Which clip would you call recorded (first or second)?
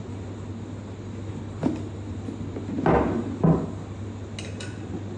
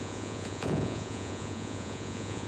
first